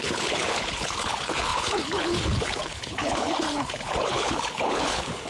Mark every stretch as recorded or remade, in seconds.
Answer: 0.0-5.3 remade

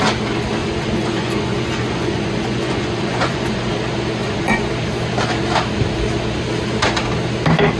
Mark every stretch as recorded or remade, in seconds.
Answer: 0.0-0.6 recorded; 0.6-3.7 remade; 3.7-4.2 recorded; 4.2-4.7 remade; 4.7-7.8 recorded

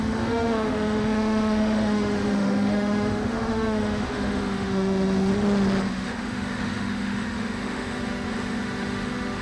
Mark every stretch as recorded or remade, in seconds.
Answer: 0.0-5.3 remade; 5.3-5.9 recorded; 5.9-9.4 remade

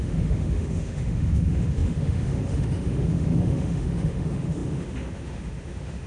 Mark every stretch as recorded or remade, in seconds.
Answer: 0.0-6.1 remade

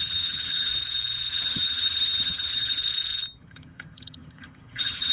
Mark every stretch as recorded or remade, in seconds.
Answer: 0.0-0.7 remade; 0.7-1.3 recorded; 1.3-2.8 remade; 2.8-3.4 recorded; 3.4-5.1 remade

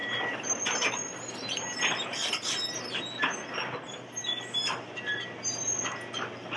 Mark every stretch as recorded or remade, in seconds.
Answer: 0.0-6.6 recorded

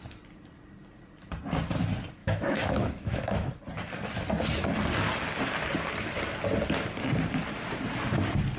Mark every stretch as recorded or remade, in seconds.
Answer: 0.0-2.2 recorded; 2.2-3.5 remade; 3.5-8.6 recorded